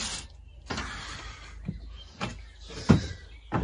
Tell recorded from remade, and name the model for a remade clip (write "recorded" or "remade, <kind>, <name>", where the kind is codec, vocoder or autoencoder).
recorded